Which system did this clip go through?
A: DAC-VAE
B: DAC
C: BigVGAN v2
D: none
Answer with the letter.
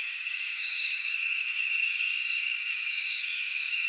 B